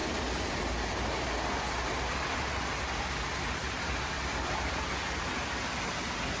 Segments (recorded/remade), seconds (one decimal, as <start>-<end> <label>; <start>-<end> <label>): 0.0-3.6 recorded; 3.6-4.9 remade; 4.9-6.4 recorded